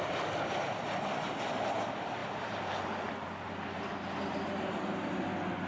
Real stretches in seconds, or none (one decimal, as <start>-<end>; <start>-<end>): 0.0-5.7